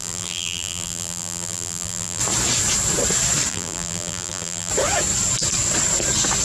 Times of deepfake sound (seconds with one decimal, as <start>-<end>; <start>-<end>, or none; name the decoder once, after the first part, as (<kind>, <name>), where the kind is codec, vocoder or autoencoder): 0.0-2.2 (vocoder, BigVGAN v2); 3.5-4.7